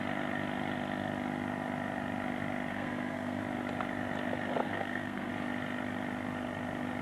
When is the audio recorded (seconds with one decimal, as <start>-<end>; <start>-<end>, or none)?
0.0-2.7; 3.4-4.6; 5.3-7.0